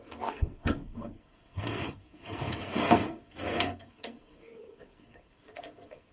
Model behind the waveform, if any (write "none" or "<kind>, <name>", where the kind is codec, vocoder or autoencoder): codec, SNAC